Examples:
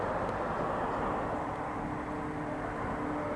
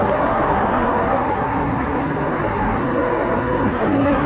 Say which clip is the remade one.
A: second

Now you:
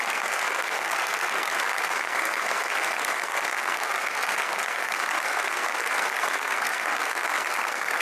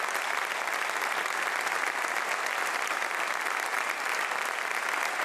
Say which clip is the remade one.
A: first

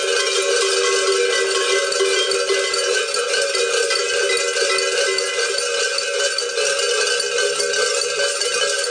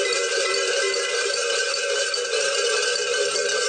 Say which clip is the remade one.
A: second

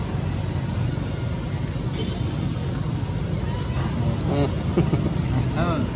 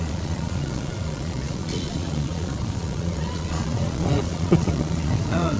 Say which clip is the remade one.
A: second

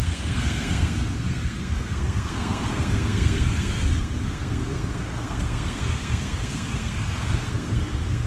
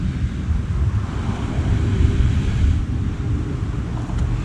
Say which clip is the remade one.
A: first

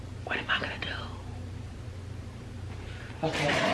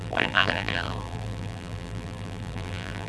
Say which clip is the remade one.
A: second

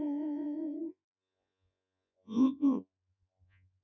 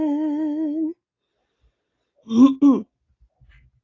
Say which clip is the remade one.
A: first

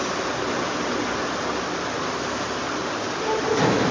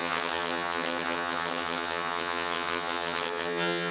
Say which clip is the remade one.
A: second